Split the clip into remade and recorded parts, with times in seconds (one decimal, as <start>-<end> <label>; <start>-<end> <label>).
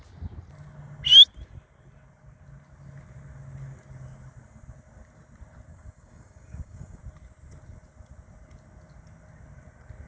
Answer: 0.0-5.7 recorded; 5.7-7.0 remade; 7.0-10.1 recorded